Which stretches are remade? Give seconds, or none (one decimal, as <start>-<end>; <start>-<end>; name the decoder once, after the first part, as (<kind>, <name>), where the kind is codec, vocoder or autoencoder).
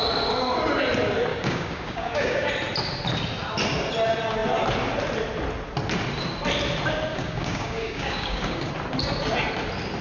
1.3-2.5 (codec, DAC); 7.1-8.7